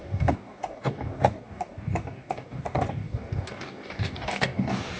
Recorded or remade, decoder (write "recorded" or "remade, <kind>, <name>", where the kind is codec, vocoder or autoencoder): remade, codec, DAC